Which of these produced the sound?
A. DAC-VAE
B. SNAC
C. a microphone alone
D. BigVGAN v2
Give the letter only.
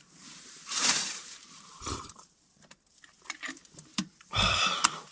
D